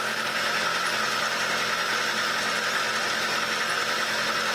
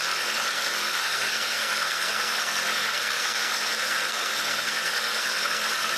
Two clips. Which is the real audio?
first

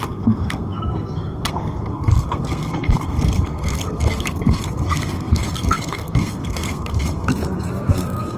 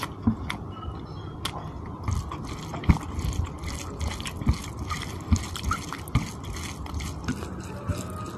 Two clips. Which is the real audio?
second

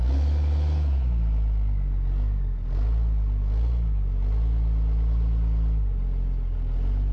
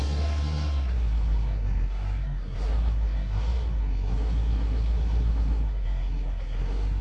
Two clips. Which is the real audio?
first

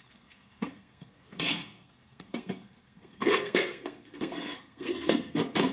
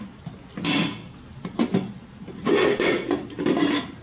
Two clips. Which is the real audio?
second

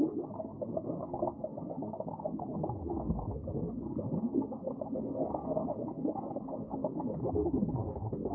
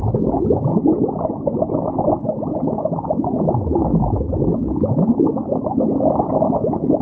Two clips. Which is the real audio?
second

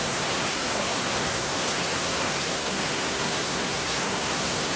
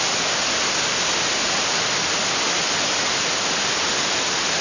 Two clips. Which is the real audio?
second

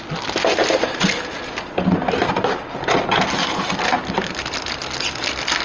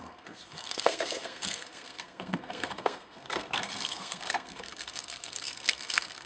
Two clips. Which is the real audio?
first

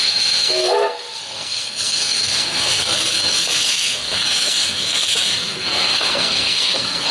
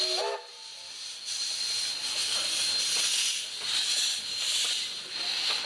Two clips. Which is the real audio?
second